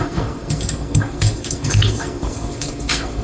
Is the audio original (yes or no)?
no